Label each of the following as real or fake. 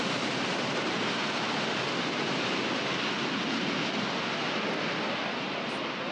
real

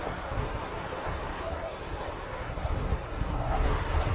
fake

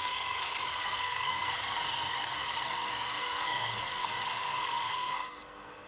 fake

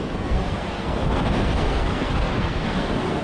fake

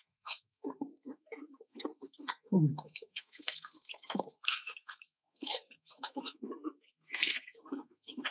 fake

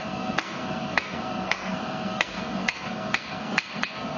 fake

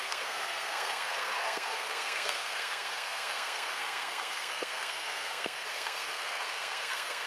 fake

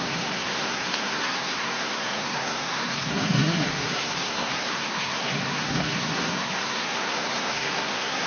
fake